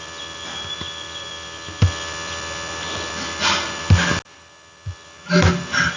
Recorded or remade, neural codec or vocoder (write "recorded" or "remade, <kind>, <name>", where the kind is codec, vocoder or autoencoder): recorded